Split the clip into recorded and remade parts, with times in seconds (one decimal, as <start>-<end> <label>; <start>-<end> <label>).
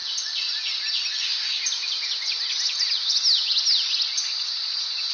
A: 0.0-1.2 recorded; 1.2-1.6 remade; 1.6-5.1 recorded